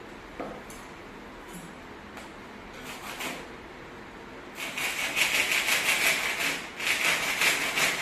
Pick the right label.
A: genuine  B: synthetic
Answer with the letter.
A